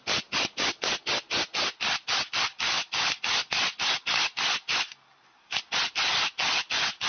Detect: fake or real real